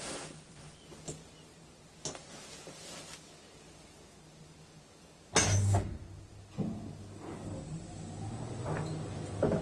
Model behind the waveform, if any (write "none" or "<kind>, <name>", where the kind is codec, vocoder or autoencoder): none